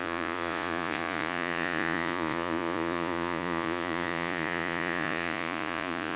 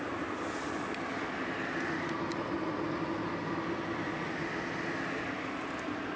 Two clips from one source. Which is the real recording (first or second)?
second